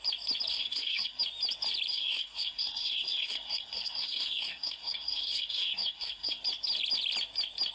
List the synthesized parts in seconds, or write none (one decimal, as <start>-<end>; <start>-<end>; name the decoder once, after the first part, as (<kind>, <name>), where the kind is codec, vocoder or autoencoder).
0.5-1.2 (codec, SNAC); 1.9-6.4